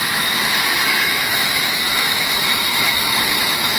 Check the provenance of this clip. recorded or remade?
remade